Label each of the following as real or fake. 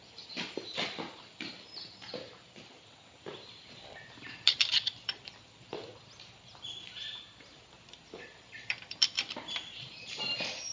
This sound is fake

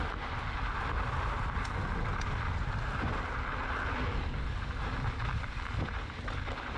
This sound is real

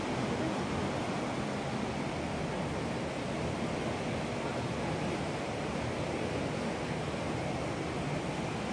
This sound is real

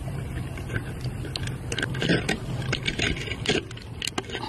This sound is real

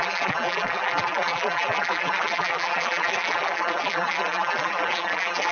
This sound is fake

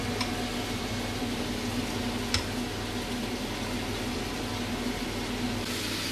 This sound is real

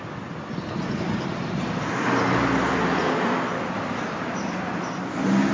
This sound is real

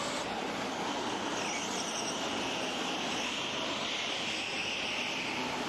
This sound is real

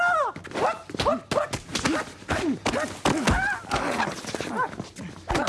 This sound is real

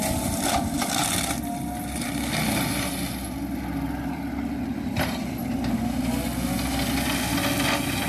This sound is real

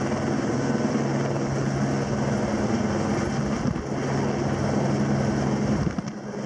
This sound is real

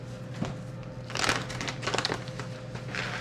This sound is real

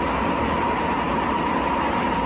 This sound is real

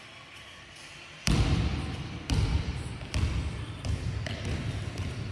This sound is fake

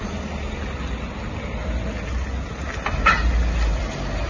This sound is real